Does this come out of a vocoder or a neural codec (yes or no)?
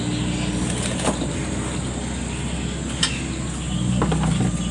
no